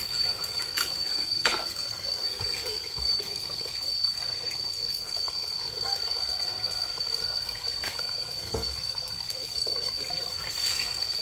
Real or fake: fake